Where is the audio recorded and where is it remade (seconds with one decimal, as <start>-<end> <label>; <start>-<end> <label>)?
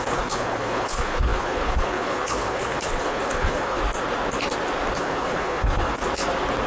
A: 0.0-3.8 remade; 3.8-5.0 recorded; 5.0-6.0 remade; 6.0-6.7 recorded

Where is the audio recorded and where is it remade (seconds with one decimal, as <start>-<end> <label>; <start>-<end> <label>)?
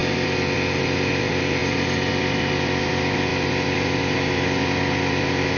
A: 0.0-5.6 recorded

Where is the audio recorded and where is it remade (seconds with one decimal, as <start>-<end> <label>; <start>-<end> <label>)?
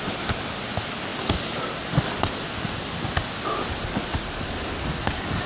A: 0.0-5.5 recorded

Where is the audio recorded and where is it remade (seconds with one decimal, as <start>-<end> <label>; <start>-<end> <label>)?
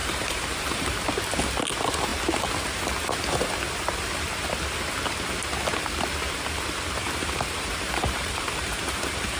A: 0.0-0.9 remade; 0.9-7.0 recorded; 7.0-9.4 remade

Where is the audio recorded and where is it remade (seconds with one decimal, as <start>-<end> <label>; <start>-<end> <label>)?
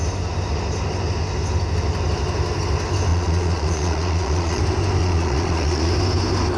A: 0.0-3.1 recorded; 3.1-4.6 remade; 4.6-5.0 recorded; 5.0-5.9 remade; 5.9-6.6 recorded